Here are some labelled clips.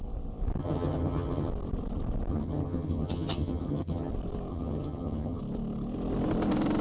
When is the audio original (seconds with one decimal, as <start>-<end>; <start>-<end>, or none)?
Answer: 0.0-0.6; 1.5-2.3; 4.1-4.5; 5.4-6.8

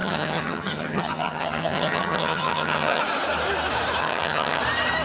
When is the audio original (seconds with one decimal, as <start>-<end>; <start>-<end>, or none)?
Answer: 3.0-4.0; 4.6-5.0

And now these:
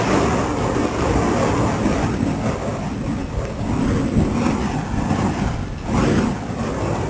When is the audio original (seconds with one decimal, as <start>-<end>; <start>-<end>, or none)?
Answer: 0.0-7.1